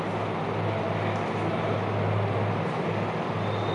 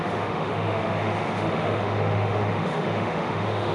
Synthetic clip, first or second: second